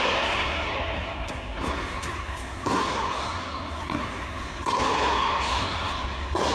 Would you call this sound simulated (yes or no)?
yes